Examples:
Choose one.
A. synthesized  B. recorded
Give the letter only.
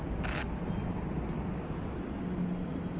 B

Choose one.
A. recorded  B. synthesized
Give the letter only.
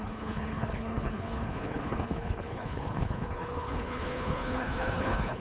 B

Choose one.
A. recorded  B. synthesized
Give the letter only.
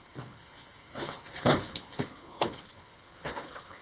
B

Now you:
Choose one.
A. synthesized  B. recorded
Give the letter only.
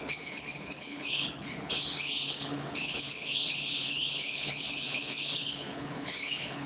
A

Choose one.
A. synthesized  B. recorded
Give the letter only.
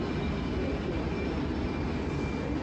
B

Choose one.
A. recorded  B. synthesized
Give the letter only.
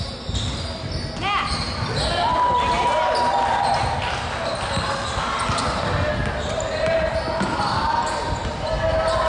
A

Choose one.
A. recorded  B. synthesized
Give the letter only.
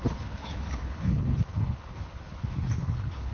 B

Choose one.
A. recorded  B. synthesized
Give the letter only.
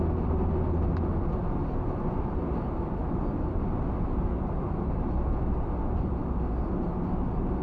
A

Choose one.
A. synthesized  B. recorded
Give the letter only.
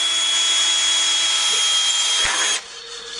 B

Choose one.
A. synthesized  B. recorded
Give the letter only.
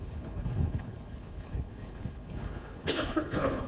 A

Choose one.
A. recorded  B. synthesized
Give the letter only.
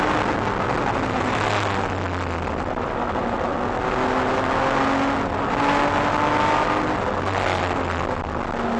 A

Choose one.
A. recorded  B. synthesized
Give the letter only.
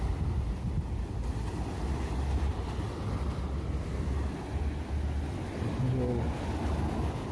A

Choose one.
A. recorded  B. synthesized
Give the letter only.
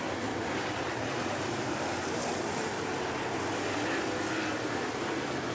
A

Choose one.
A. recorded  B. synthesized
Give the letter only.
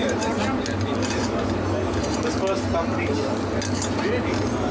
A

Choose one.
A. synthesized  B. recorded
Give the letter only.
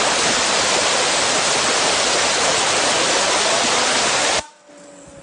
B